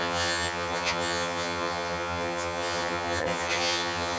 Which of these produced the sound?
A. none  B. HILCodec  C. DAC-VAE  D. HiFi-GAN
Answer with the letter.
D